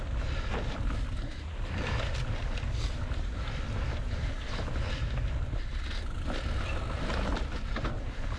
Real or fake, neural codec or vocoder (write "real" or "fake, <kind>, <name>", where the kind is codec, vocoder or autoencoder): real